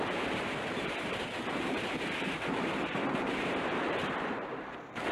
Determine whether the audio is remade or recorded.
remade